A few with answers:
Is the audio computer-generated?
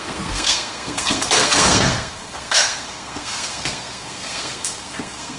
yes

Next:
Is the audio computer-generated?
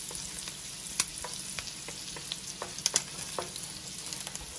no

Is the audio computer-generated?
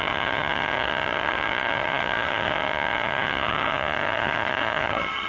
yes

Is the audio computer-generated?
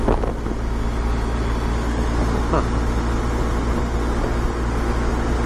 no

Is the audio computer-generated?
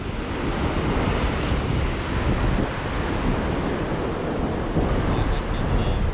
no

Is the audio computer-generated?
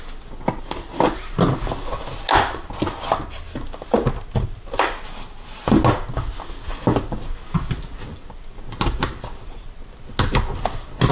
no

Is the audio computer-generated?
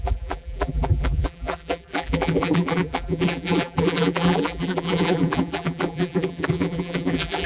yes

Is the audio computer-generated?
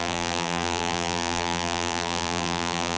yes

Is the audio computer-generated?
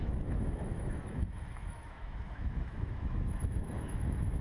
yes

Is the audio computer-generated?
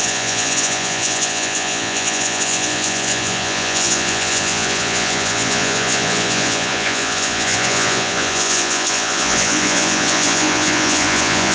yes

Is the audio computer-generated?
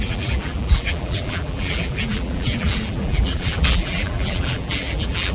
yes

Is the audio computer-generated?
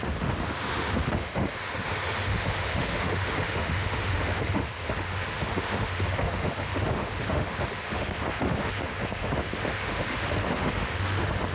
yes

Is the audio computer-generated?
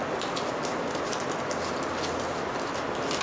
no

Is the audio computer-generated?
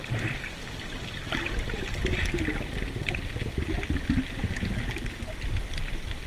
no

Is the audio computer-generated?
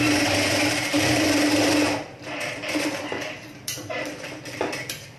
yes